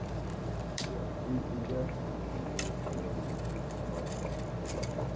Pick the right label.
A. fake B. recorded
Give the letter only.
A